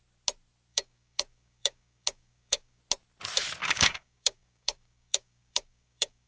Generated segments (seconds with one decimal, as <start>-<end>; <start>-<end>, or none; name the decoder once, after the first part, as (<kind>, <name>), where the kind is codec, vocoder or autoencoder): 0.7-2.8 (codec, DAC); 3.6-6.3